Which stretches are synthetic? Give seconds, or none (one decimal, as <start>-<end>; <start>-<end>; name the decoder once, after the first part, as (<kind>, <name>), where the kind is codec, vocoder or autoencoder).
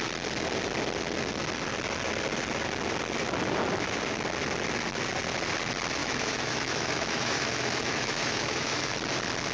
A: 6.0-8.9 (autoencoder, DAC-VAE)